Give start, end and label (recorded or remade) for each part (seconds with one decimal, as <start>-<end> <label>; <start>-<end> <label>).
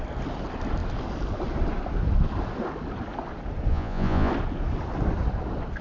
0.0-3.7 recorded; 3.7-4.3 remade; 4.3-5.8 recorded